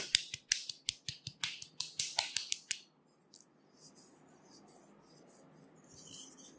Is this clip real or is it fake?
real